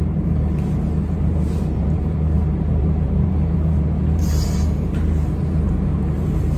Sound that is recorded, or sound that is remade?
remade